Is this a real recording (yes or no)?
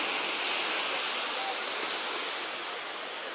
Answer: yes